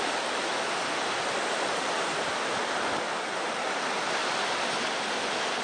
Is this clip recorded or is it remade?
recorded